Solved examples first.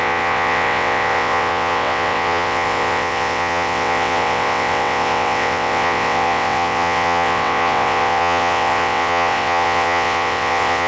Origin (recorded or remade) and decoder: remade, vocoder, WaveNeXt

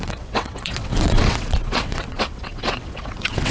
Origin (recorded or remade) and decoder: remade, vocoder, WaveNeXt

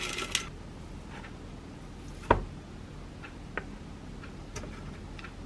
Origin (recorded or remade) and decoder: recorded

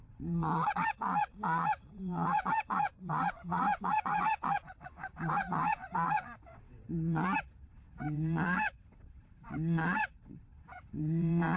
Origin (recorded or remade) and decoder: remade, vocoder, WaveNeXt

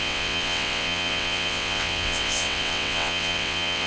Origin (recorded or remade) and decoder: remade, vocoder, WaveNeXt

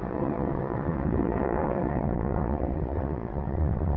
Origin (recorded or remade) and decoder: remade, vocoder, WaveNeXt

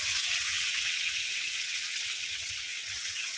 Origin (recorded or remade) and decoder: remade, vocoder, WaveNeXt